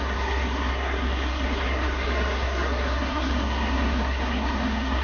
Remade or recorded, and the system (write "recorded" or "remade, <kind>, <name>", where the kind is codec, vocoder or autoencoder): remade, codec, SNAC